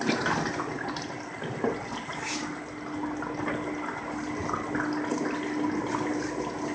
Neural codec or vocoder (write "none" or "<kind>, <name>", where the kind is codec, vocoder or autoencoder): none